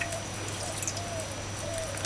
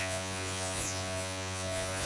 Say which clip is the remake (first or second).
second